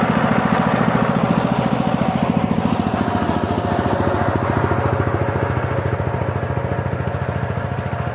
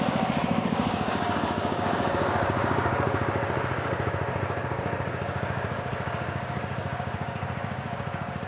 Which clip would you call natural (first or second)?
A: first